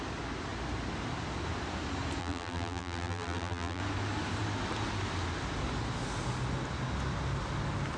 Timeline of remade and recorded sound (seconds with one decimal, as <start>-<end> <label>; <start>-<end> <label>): 0.0-2.2 recorded; 2.2-3.8 remade; 3.8-8.0 recorded